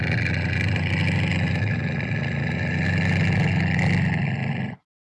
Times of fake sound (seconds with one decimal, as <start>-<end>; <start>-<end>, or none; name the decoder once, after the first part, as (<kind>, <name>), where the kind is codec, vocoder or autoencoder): none